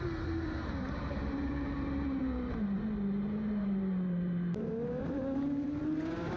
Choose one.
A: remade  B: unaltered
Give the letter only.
A